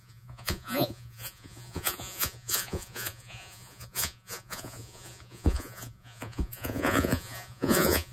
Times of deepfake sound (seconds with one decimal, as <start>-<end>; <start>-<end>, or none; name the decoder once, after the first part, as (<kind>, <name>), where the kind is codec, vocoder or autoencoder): 0.0-8.1 (vocoder, Vocos)

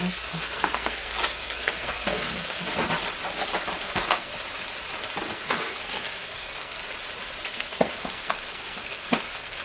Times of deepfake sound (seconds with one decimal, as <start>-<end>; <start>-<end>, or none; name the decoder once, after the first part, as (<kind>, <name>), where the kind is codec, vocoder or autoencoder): 0.0-2.8 (codec, SNAC); 3.8-4.3; 5.3-6.8; 7.4-9.6

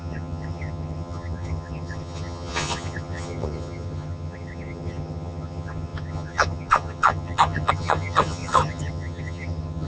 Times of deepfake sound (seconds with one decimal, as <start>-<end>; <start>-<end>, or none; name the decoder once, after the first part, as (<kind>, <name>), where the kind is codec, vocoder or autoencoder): 0.0-9.9 (vocoder, HiFi-GAN)

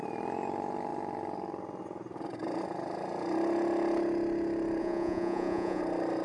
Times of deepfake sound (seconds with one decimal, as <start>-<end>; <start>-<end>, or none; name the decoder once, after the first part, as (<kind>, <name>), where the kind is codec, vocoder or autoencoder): 4.8-5.8 (vocoder, Vocos)

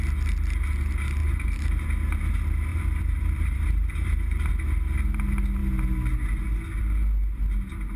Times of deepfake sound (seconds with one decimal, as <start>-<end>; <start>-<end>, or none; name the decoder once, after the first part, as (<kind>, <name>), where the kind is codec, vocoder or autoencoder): 1.2-1.8 (vocoder, BigVGAN v2); 2.7-4.5

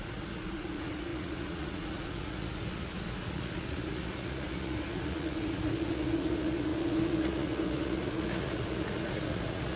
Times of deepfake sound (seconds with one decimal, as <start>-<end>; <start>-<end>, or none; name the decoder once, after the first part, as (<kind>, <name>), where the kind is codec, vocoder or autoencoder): 0.0-9.8 (vocoder, Vocos)

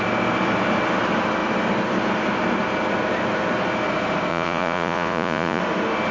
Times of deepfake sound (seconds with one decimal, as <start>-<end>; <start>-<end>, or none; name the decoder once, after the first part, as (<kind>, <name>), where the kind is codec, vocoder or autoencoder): 4.3-5.6 (vocoder, Vocos)